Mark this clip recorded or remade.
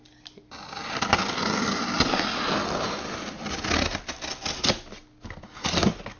recorded